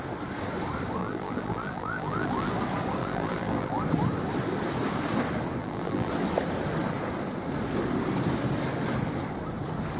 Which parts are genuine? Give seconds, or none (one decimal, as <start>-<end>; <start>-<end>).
0.0-1.0; 2.5-3.0; 3.8-5.6; 6.1-10.0

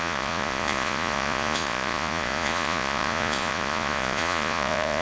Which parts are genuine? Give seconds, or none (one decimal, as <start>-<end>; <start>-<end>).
none

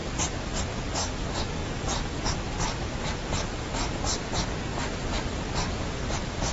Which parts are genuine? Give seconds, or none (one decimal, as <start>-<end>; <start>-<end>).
0.0-6.5